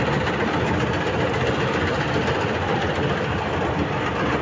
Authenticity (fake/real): real